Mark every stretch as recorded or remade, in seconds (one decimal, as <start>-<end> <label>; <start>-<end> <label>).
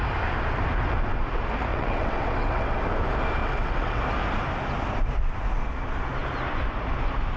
0.0-1.7 recorded; 1.7-2.7 remade; 2.7-3.4 recorded; 3.4-4.0 remade; 4.0-7.4 recorded